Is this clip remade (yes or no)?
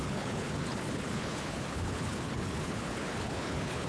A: yes